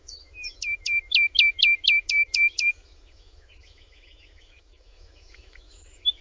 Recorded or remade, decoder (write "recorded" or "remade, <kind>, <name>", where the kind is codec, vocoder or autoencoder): remade, autoencoder, DAC-VAE